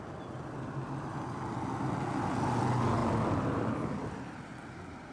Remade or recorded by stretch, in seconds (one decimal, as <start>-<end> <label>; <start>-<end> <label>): 0.0-5.1 recorded